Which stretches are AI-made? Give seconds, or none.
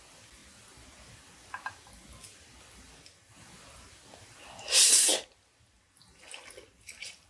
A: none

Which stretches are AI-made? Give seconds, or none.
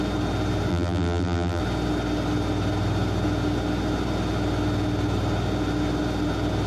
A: 0.7-1.6 (vocoder, BigVGAN v2)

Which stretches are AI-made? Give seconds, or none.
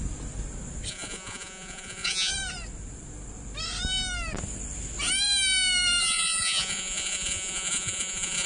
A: 0.9-2.3 (vocoder, Vocos); 6.0-8.5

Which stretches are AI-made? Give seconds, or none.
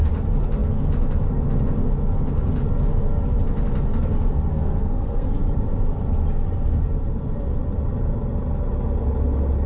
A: 4.5-5.3 (codec, SNAC)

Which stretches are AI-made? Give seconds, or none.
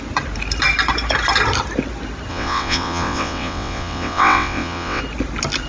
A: 2.3-5.0 (vocoder, WaveNeXt)